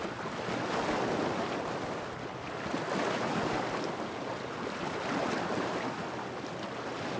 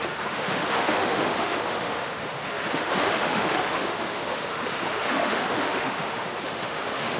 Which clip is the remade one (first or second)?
second